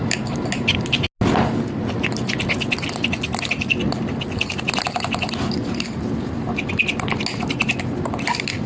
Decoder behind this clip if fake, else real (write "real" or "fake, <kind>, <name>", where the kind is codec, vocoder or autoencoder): real